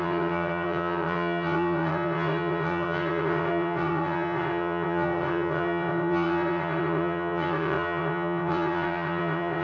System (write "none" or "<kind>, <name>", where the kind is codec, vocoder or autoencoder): vocoder, WaveNeXt